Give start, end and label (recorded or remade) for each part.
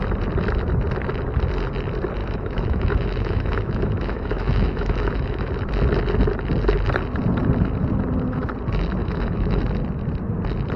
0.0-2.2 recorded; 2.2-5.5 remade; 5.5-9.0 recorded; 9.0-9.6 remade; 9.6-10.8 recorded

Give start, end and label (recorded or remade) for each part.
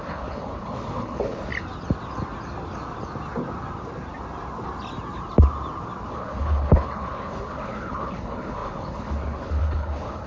0.0-1.5 remade; 1.5-6.1 recorded; 6.1-10.3 remade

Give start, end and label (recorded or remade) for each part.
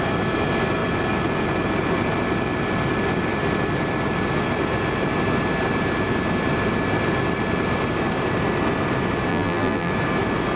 0.0-9.3 recorded; 9.3-9.9 remade; 9.9-10.6 recorded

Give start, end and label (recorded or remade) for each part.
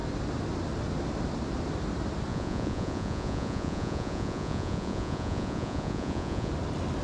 0.0-2.3 recorded; 2.3-6.5 remade; 6.5-7.0 recorded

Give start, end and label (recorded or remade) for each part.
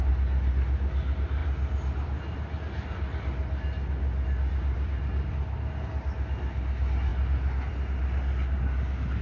0.0-9.2 recorded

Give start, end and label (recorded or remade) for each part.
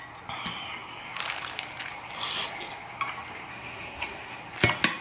0.0-3.5 recorded; 3.5-4.4 remade; 4.4-5.0 recorded